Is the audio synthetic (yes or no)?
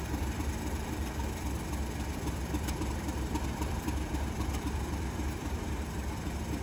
yes